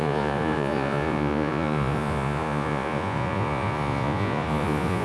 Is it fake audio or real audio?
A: fake